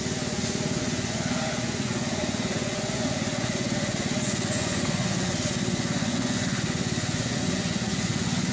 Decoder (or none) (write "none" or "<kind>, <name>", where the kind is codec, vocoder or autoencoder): vocoder, Vocos